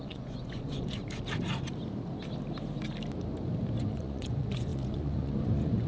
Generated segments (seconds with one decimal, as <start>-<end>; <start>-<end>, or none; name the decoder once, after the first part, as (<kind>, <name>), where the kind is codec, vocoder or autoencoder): 0.0-1.0 (vocoder, Vocos); 3.8-5.9